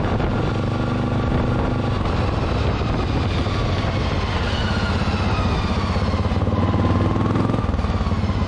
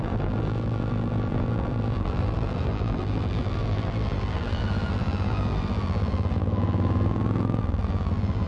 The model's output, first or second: second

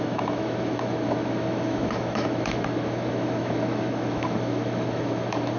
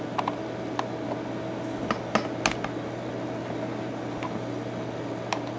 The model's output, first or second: first